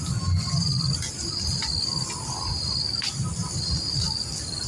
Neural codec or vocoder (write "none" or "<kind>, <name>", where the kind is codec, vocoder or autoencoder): none